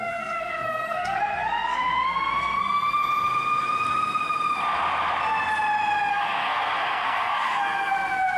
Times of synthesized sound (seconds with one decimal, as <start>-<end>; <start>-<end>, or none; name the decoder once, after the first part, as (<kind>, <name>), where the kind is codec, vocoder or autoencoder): 0.0-3.0 (codec, SNAC); 6.1-8.4